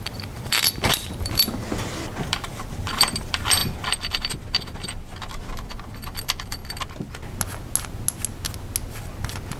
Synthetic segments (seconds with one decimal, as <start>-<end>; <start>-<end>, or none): 0.0-3.6; 5.6-6.6